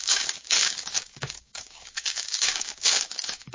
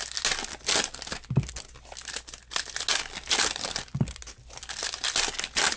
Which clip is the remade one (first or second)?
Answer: first